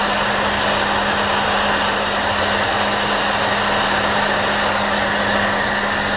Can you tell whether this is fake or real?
real